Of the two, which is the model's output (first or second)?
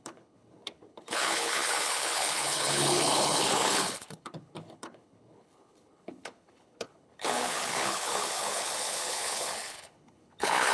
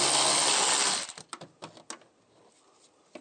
first